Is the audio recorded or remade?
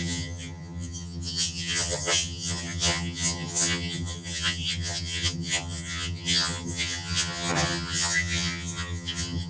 remade